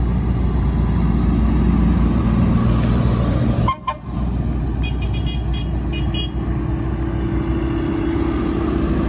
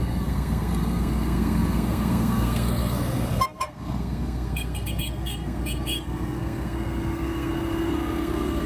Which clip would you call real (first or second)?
first